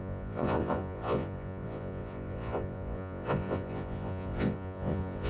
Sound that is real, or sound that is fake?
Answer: fake